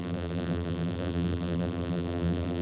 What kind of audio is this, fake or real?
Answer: fake